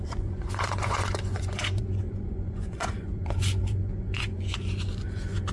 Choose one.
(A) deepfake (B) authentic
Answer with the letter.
A